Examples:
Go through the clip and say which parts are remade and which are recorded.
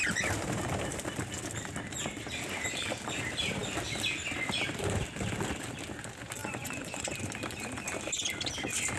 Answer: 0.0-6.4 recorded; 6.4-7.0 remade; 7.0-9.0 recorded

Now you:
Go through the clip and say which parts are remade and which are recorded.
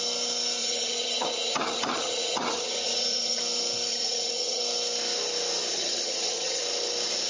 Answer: 0.0-0.6 recorded; 0.6-3.4 remade; 3.4-3.9 recorded; 3.9-4.6 remade; 4.6-5.7 recorded; 5.7-6.6 remade; 6.6-7.3 recorded